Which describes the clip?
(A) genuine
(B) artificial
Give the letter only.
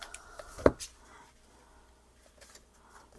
A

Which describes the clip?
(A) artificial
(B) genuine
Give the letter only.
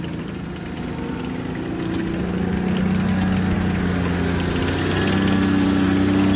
B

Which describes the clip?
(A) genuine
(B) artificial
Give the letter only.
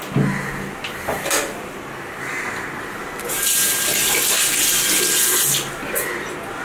A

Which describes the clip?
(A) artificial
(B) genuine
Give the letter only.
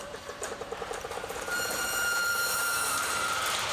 A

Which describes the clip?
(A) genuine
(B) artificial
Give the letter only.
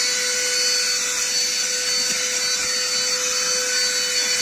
A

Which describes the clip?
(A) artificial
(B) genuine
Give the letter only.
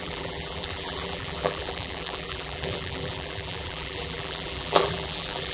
A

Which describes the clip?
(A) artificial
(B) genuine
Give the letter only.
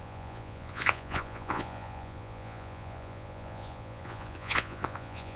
A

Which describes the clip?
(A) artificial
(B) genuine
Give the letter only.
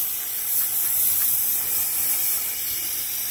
A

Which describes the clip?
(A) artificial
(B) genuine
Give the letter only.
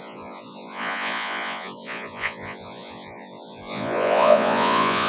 A